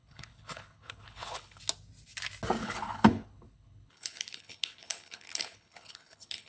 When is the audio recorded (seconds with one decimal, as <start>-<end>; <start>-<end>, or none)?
1.6-2.6